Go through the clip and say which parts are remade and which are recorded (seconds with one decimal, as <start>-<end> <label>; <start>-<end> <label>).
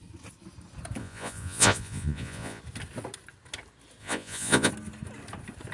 0.0-1.0 recorded; 1.0-2.6 remade; 2.6-4.0 recorded; 4.0-4.7 remade; 4.7-5.7 recorded